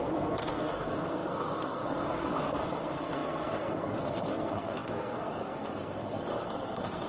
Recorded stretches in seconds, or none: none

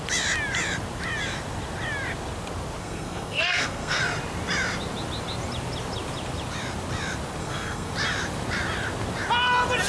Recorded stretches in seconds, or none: 0.0-2.8; 4.0-7.4; 7.9-9.9

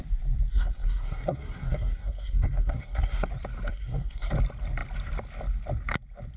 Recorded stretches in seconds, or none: 0.0-0.5; 3.3-3.7; 4.3-6.4

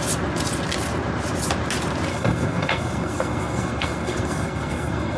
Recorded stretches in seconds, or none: 0.0-2.1

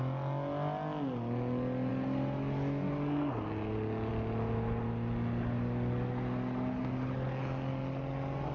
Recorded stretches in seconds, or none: 0.0-8.5

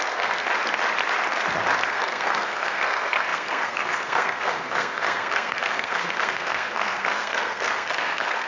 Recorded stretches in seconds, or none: 0.4-1.9